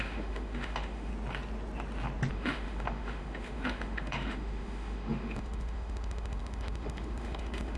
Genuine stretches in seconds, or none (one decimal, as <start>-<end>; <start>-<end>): 1.1-2.3